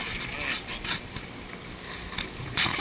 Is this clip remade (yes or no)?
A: no